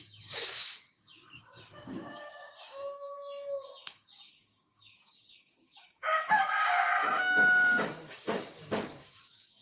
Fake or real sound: fake